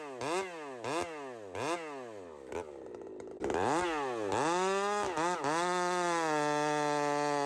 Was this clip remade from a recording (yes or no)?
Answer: no